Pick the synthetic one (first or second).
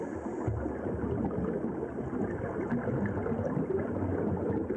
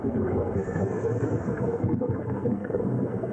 second